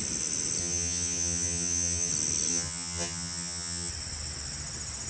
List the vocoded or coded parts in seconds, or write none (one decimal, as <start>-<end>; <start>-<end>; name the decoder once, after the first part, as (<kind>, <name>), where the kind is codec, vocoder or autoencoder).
0.6-2.1 (vocoder, HiFi-GAN); 2.5-3.9